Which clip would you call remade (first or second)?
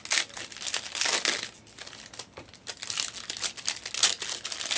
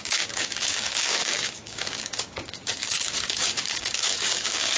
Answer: second